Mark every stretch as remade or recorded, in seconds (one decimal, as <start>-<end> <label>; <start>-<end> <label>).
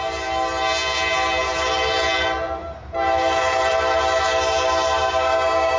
0.0-5.0 recorded; 5.0-5.8 remade